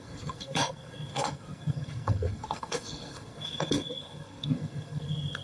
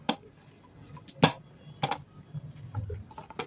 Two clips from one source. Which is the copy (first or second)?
first